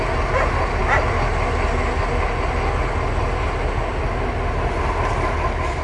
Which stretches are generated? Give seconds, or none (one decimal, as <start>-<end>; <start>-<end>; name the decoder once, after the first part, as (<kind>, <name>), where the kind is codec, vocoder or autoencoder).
none